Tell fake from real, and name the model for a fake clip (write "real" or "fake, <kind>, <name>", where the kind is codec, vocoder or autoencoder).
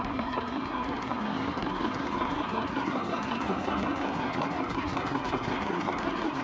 fake, codec, SNAC